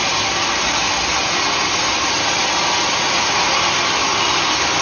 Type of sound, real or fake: real